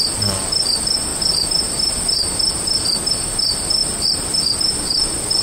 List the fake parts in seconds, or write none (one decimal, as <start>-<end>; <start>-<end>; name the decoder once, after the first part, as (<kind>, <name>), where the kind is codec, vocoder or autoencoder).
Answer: 3.8-4.4 (vocoder, BigVGAN v2)